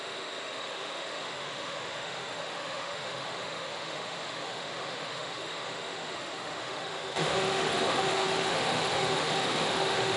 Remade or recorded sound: remade